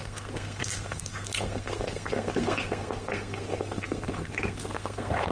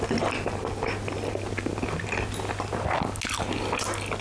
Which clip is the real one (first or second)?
second